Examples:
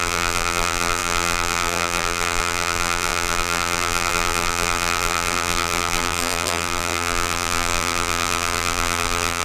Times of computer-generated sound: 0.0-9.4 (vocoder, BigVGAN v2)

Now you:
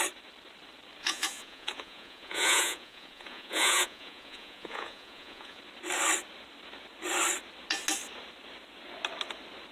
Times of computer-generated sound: 1.0-5.6 (vocoder, Vocos)

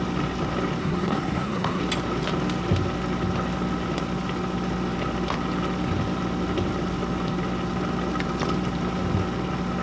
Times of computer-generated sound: 0.8-1.8 (codec, SNAC)